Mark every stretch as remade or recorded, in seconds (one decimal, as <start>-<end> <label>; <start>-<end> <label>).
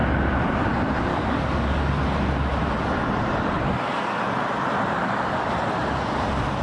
0.0-1.1 recorded; 1.1-1.8 remade; 1.8-6.6 recorded